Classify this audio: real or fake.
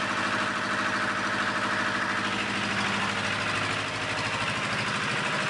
real